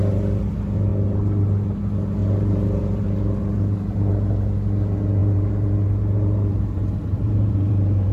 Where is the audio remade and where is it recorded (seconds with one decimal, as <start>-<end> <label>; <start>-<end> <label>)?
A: 0.0-2.2 recorded; 2.2-4.1 remade; 4.1-5.2 recorded; 5.2-8.1 remade